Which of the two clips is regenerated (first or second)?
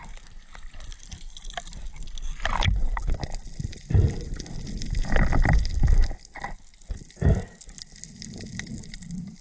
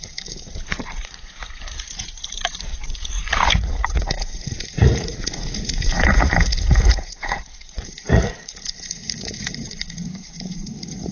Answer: second